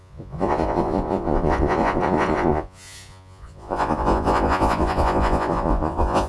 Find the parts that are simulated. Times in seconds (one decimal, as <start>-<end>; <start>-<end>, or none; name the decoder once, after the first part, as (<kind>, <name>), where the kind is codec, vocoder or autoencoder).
0.0-6.3 (vocoder, Vocos)